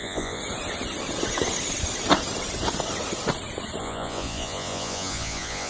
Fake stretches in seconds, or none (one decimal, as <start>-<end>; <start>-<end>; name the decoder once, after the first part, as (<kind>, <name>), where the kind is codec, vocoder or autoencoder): 0.0-0.4 (vocoder, Vocos); 3.8-5.7